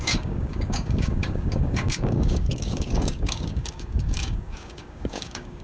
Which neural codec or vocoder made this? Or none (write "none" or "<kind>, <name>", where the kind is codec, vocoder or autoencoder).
codec, DAC